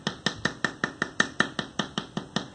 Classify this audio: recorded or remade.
recorded